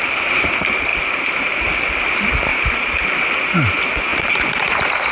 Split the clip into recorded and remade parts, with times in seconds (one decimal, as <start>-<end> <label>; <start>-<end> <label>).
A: 0.0-0.9 recorded; 0.9-1.9 remade; 1.9-2.5 recorded; 2.5-3.1 remade; 3.1-5.1 recorded

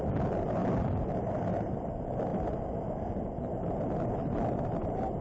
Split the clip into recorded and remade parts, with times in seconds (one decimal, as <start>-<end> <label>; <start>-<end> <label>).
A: 0.0-5.2 recorded